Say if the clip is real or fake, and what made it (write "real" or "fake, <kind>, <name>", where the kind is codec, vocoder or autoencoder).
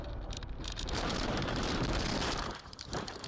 fake, vocoder, BigVGAN v2